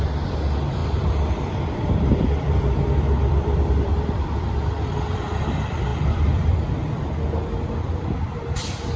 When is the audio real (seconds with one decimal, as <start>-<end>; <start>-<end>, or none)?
5.9-7.7